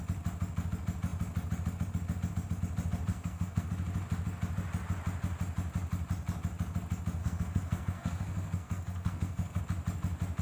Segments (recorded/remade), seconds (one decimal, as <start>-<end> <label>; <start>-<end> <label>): 0.0-3.1 recorded; 3.1-3.7 remade; 3.7-7.2 recorded; 7.2-9.6 remade; 9.6-10.4 recorded